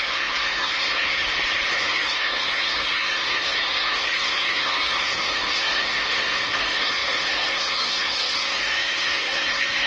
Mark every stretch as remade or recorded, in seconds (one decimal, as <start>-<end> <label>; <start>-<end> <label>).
0.0-1.2 remade; 1.2-1.7 recorded; 1.7-9.9 remade